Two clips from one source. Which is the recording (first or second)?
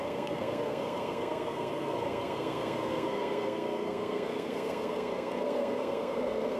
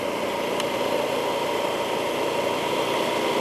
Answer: second